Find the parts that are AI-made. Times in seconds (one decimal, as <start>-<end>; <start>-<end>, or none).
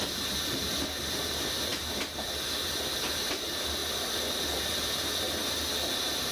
none